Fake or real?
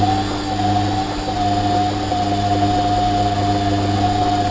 real